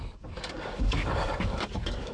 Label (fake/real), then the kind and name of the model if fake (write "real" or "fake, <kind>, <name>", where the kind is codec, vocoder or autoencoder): fake, codec, DAC